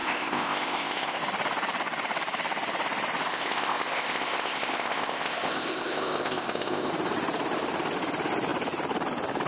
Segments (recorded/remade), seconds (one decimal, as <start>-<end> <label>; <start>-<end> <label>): 0.0-1.2 remade; 1.2-3.3 recorded; 3.3-6.9 remade; 6.9-9.5 recorded